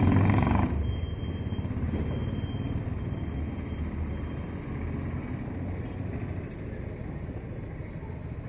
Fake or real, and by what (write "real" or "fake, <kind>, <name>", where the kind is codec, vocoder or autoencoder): real